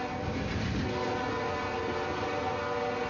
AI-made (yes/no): no